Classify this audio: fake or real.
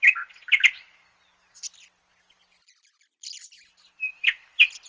real